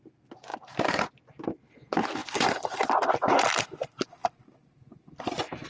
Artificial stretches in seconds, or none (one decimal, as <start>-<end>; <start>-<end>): 0.5-1.7; 2.2-3.1; 4.2-5.3